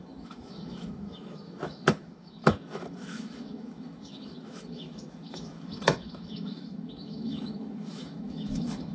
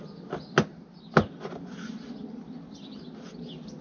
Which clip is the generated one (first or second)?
first